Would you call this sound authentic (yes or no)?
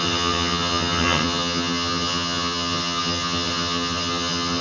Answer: no